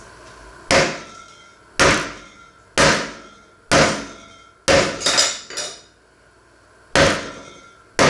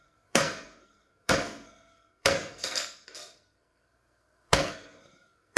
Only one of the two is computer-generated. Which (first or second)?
second